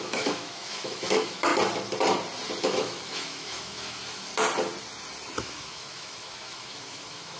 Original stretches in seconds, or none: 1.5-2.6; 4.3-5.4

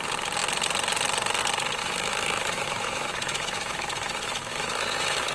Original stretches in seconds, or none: 0.0-1.8

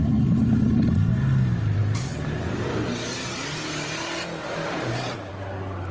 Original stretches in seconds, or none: 0.0-5.9

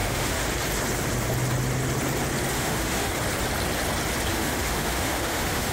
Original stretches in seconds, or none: 0.5-2.5; 3.1-4.3

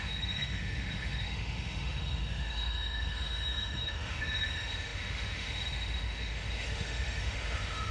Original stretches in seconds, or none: none

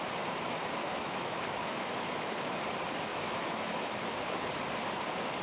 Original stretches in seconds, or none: 0.0-0.8; 2.6-3.1; 4.5-5.4

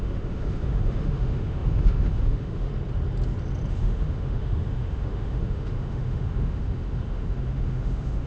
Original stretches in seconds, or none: 2.7-3.7

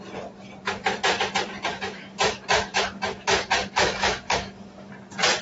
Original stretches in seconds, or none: 0.0-1.7; 4.9-5.4